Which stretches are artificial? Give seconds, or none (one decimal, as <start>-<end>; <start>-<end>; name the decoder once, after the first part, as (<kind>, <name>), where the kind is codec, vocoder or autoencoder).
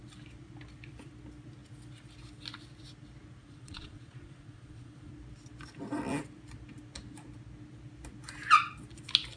3.4-5.1 (vocoder, Vocos)